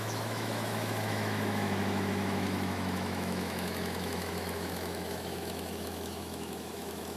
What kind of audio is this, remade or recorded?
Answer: remade